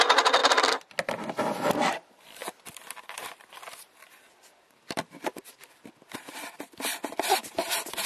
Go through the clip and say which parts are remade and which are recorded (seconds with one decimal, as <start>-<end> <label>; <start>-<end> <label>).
0.0-0.4 remade; 0.4-1.4 recorded; 1.4-8.1 remade